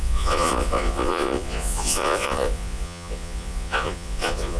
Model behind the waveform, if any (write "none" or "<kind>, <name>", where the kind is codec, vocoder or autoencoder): vocoder, Vocos